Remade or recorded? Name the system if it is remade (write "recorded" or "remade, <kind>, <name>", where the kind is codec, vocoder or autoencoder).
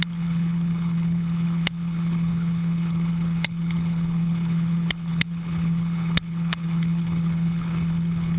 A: remade, codec, HILCodec